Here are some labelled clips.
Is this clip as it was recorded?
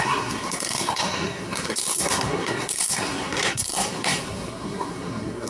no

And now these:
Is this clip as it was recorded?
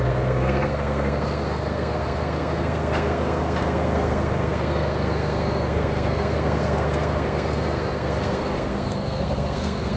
no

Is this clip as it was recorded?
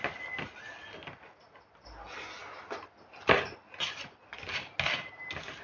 yes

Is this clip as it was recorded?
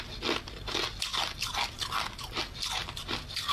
yes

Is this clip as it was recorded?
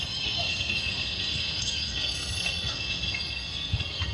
no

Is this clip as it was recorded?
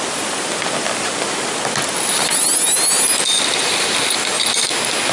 yes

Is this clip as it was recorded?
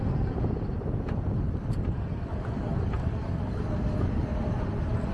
yes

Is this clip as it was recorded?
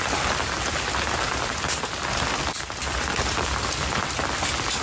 yes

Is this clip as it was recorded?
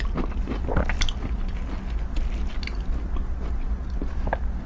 yes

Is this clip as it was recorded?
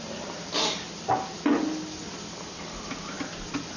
yes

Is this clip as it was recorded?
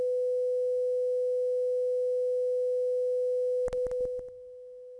yes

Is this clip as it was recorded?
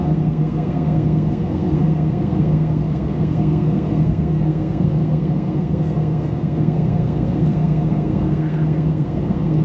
no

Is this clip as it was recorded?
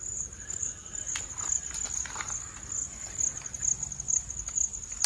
yes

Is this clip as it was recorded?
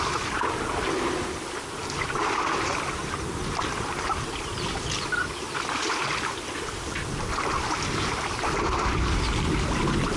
yes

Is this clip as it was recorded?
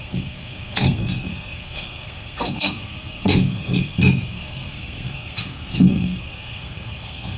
no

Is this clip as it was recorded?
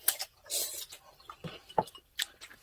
yes